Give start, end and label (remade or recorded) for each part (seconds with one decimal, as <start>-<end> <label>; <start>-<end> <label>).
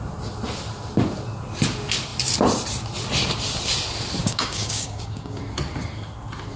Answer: 0.0-4.2 recorded; 4.2-5.4 remade; 5.4-6.6 recorded